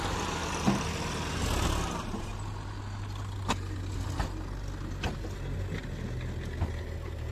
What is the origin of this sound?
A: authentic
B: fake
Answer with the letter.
A